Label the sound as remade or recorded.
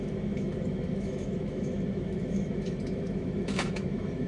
remade